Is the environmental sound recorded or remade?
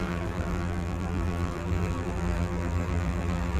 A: remade